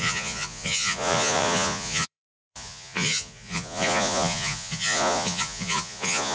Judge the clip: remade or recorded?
remade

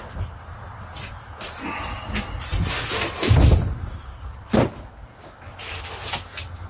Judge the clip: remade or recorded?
recorded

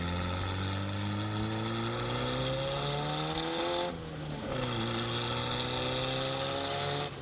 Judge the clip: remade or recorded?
recorded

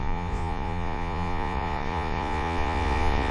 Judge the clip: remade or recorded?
remade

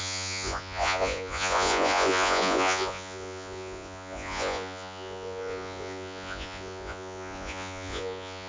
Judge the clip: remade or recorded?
remade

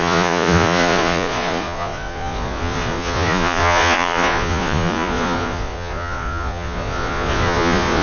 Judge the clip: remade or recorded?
remade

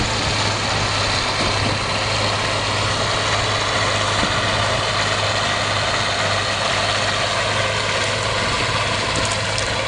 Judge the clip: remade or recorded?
recorded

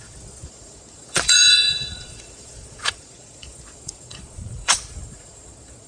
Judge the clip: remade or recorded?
remade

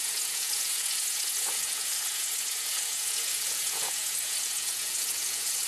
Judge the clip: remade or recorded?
remade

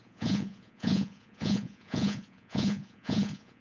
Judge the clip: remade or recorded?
remade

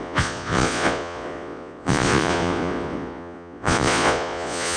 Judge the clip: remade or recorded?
remade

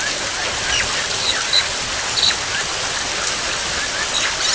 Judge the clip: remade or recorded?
recorded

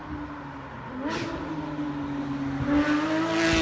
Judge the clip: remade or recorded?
recorded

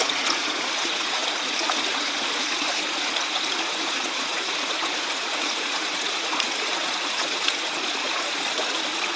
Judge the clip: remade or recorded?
remade